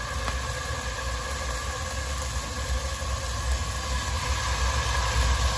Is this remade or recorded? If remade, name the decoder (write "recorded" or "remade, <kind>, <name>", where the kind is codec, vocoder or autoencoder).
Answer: recorded